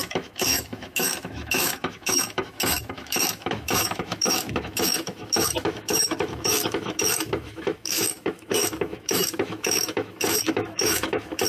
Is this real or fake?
fake